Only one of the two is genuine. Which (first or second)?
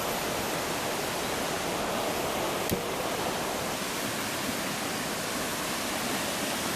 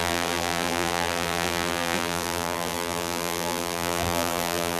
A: first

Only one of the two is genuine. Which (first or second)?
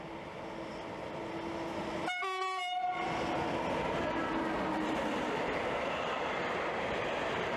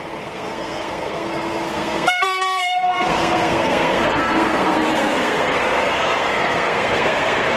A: first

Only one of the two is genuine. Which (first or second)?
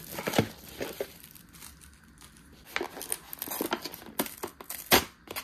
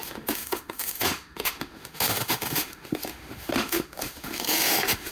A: first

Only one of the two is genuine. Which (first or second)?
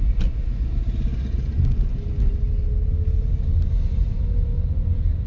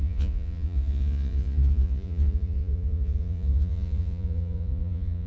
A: first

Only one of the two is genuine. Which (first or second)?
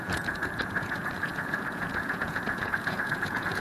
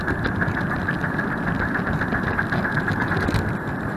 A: second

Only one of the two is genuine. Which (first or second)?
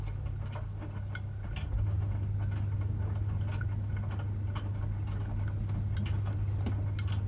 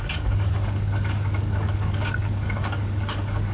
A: first